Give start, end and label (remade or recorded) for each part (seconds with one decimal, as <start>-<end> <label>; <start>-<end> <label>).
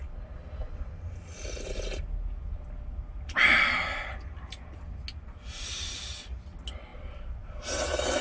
0.0-8.2 recorded